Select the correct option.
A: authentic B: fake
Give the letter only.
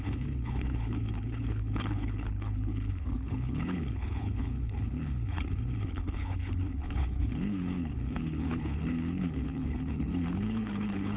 B